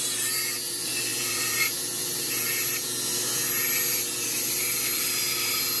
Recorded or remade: recorded